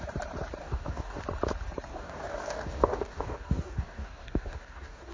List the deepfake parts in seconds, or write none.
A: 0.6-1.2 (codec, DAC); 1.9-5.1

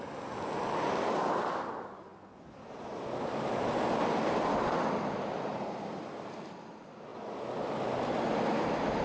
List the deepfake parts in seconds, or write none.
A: none

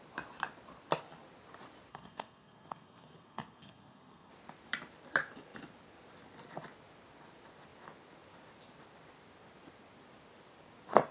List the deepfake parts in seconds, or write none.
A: 1.9-4.3 (codec, SNAC)

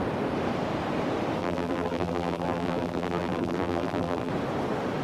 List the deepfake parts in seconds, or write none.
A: 1.4-4.3 (vocoder, BigVGAN v2)

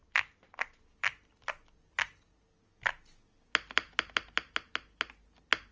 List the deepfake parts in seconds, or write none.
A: none

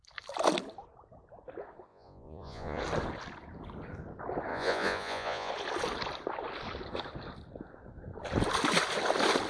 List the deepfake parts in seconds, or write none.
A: 1.9-2.8 (vocoder, Vocos); 4.5-5.5

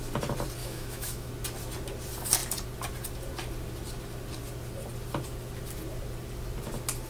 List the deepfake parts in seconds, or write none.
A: 0.6-1.3 (autoencoder, DAC-VAE)